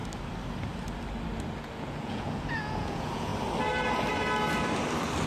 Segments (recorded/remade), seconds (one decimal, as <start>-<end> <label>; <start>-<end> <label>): 0.0-1.6 recorded; 1.6-3.3 remade; 3.3-5.3 recorded